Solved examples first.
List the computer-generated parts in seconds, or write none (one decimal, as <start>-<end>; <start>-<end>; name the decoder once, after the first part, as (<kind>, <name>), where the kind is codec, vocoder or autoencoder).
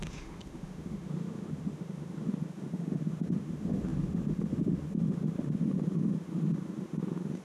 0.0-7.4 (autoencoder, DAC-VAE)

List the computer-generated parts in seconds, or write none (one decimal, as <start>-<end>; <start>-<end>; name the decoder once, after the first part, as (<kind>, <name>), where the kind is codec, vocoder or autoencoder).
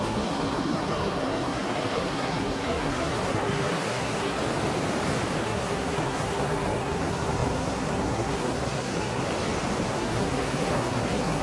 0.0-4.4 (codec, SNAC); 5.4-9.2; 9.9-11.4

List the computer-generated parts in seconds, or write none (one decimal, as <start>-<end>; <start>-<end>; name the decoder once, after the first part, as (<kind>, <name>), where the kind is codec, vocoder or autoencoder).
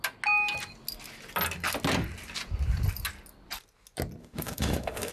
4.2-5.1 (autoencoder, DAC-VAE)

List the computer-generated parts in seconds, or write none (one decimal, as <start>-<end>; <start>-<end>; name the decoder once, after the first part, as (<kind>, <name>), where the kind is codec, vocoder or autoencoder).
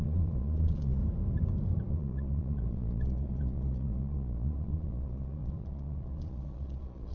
0.0-1.0 (vocoder, Vocos); 1.9-7.1